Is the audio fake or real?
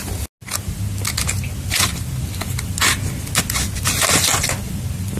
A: real